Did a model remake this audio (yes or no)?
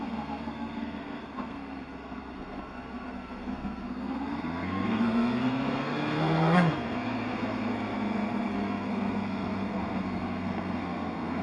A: yes